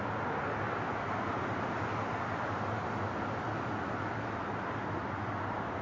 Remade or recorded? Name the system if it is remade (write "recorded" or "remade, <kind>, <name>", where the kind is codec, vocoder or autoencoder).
recorded